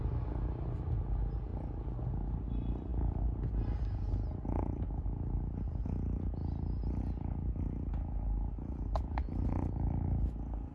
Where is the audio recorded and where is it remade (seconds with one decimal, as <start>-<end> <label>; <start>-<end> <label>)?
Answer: 0.0-1.5 recorded; 1.5-2.3 remade; 2.3-10.7 recorded